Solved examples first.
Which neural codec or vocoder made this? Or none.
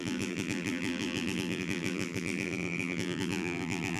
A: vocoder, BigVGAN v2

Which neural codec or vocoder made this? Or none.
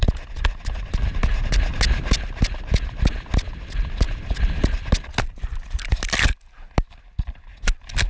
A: none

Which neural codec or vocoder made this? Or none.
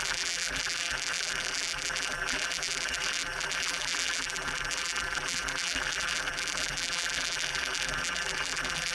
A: vocoder, BigVGAN v2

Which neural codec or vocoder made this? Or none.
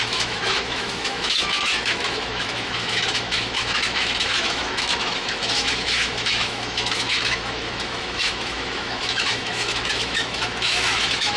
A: autoencoder, DAC-VAE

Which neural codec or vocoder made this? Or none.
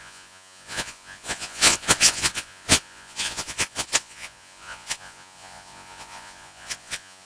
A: vocoder, Vocos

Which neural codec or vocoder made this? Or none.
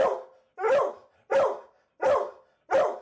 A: none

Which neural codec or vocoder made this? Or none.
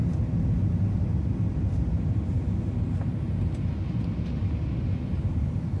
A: none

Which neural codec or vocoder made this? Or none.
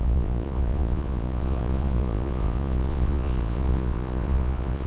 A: vocoder, Vocos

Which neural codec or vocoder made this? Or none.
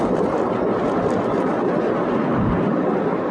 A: none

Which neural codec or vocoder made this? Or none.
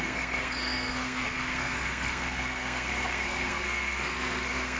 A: codec, SNAC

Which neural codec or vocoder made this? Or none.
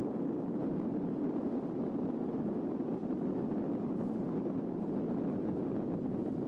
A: none